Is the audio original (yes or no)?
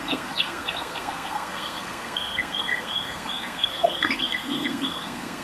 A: no